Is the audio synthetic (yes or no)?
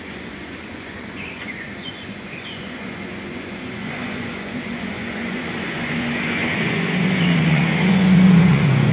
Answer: yes